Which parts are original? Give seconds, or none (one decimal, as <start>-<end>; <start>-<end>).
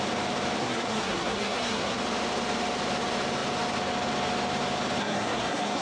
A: 0.0-0.6; 2.0-5.0